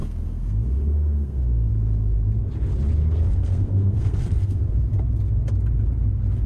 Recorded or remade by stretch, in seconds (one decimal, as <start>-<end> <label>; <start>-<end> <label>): 0.0-1.7 remade; 1.7-3.0 recorded; 3.0-4.6 remade; 4.6-6.5 recorded